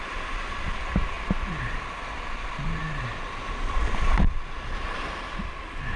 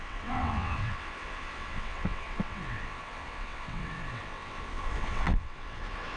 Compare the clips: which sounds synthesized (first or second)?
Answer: second